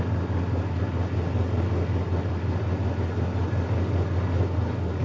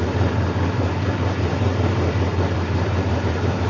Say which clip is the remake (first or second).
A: second